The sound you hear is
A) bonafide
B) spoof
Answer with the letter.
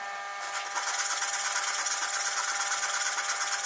A